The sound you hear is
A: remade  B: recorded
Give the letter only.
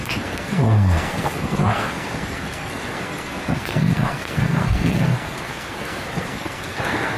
A